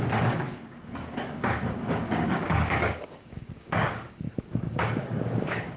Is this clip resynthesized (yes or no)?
yes